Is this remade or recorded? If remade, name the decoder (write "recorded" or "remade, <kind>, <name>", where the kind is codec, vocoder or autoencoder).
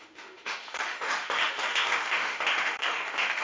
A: remade, autoencoder, DAC-VAE